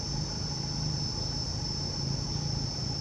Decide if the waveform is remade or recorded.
recorded